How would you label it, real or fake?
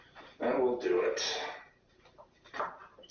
real